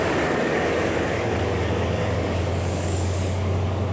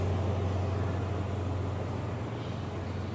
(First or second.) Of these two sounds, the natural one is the second